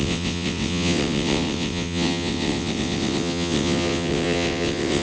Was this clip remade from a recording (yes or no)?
yes